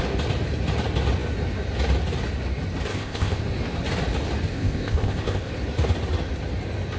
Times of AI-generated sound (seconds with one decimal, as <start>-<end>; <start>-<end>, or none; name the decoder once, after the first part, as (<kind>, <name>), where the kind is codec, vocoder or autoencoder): 2.9-3.4 (codec, ZipCodec); 4.5-5.5